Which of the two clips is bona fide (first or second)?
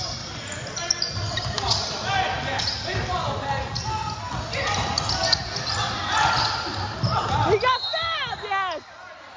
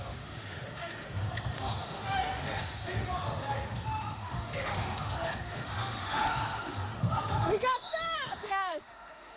first